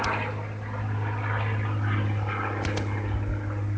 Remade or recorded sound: recorded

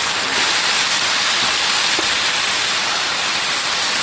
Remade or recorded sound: recorded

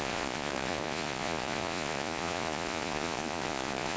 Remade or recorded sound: remade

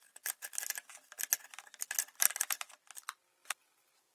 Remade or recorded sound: recorded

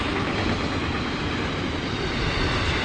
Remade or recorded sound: recorded